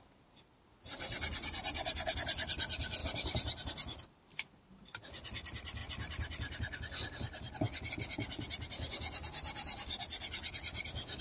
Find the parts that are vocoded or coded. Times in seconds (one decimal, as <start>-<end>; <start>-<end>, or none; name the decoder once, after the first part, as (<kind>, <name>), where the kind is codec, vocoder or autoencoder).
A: none